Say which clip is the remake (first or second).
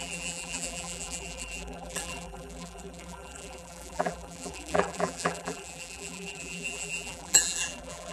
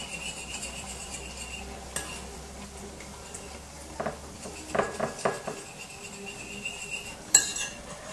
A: first